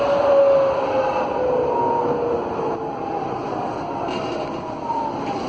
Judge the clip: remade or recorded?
recorded